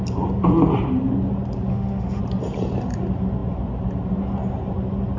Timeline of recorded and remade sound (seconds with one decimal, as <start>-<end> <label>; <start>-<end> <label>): 0.0-1.7 recorded; 1.7-2.2 remade; 2.2-5.2 recorded